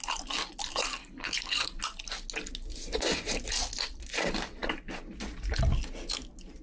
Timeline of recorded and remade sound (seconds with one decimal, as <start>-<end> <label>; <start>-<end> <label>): 0.0-1.0 recorded; 1.0-1.8 remade; 1.8-6.6 recorded